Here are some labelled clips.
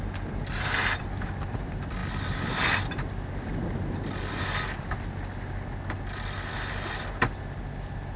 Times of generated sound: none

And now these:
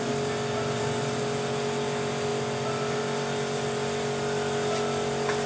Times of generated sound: none

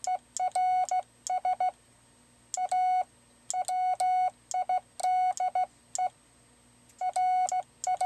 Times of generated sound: none

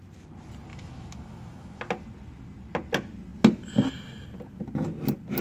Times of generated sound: 0.7-1.8 (autoencoder, DAC-VAE)